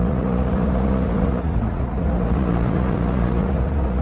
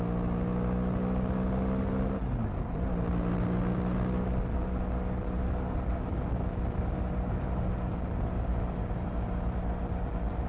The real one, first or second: second